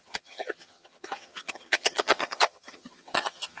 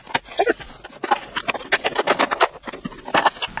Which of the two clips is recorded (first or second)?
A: second